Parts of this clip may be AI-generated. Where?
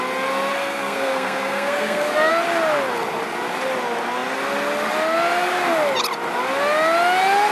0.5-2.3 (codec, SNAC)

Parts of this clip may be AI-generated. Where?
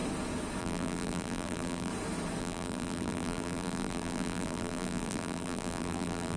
0.6-1.9 (vocoder, BigVGAN v2); 2.4-6.4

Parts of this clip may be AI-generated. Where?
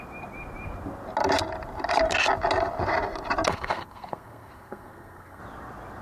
3.5-5.4 (codec, SNAC)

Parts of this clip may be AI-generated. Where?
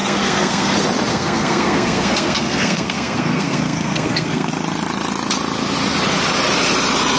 0.0-0.7 (codec, SNAC); 1.1-4.5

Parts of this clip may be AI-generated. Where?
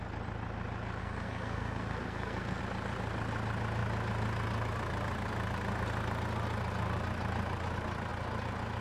1.0-2.6 (codec, SNAC)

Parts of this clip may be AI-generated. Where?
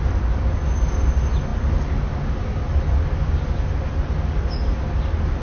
none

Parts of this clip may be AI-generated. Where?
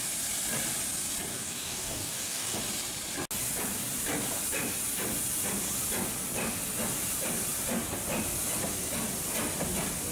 1.3-2.6 (codec, DAC)